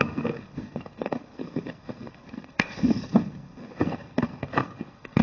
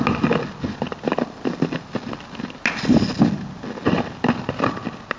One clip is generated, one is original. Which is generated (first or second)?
first